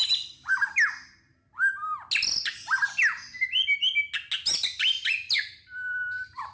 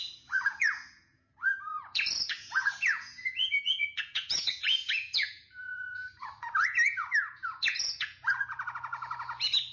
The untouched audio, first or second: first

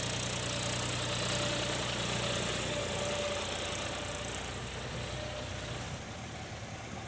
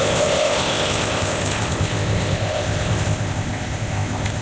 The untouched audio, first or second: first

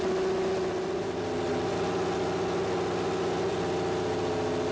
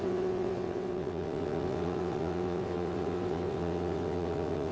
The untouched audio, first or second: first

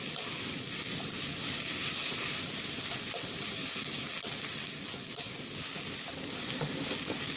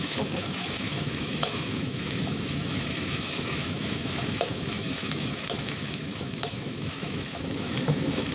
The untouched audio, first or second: first